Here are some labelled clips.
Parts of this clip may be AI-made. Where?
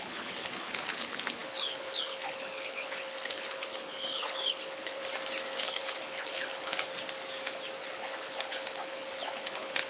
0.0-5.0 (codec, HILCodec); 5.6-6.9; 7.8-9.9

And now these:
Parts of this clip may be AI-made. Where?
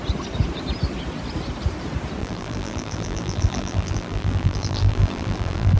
2.2-5.8 (vocoder, BigVGAN v2)